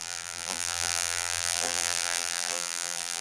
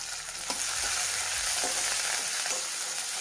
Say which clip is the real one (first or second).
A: second